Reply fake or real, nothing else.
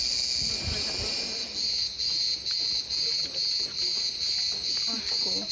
real